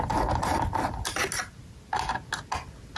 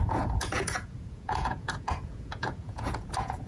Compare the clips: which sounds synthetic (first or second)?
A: second